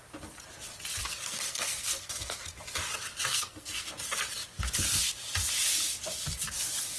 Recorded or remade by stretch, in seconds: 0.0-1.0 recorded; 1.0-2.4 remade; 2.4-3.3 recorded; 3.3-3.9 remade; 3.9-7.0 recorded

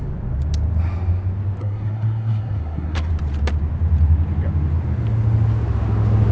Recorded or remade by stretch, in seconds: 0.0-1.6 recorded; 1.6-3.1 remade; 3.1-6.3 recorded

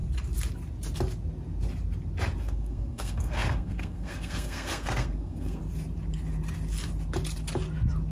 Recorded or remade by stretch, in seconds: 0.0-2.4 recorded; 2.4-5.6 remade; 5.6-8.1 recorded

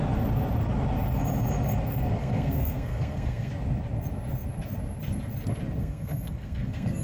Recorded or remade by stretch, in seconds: 0.0-2.2 recorded; 2.2-3.5 remade; 3.5-5.8 recorded; 5.8-7.0 remade

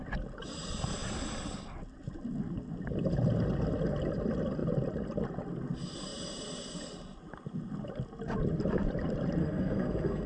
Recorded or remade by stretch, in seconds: 0.0-9.4 recorded; 9.4-10.3 remade

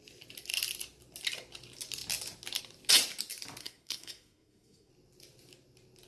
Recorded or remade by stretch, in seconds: 0.0-3.6 recorded; 3.6-4.9 remade; 4.9-6.1 recorded

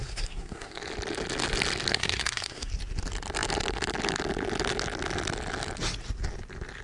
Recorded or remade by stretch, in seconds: 0.0-0.8 remade; 0.8-1.9 recorded; 1.9-2.7 remade; 2.7-6.8 recorded